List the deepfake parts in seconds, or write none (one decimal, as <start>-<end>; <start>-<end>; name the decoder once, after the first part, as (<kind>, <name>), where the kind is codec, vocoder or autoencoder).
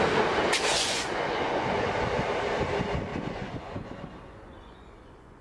0.7-1.9 (vocoder, Vocos); 3.1-5.4